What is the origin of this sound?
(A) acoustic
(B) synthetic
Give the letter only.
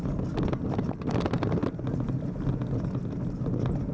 A